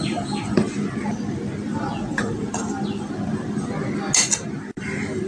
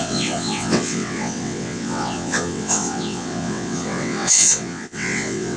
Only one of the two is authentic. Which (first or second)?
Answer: first